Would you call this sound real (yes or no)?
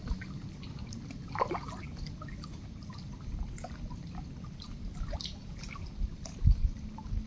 yes